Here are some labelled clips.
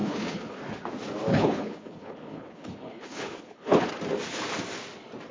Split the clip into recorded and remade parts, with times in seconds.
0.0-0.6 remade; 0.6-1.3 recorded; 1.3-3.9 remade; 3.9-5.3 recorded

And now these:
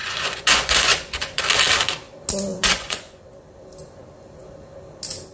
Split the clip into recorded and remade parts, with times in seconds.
0.0-1.4 remade; 1.4-2.5 recorded; 2.5-3.2 remade; 3.2-5.3 recorded

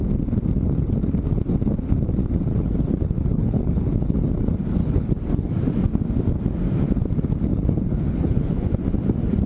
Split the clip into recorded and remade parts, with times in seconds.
0.0-2.5 recorded; 2.5-4.3 remade; 4.3-4.8 recorded; 4.8-5.5 remade; 5.5-7.5 recorded; 7.5-8.8 remade; 8.8-9.5 recorded

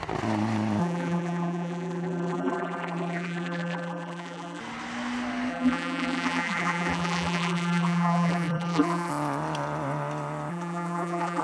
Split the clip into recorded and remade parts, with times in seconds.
0.0-0.8 recorded; 0.8-4.6 remade; 4.6-5.5 recorded; 5.5-9.1 remade; 9.1-10.5 recorded; 10.5-11.4 remade

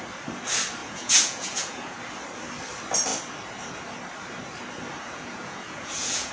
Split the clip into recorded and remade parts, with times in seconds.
0.0-0.8 recorded; 0.8-2.0 remade; 2.0-5.0 recorded; 5.0-6.3 remade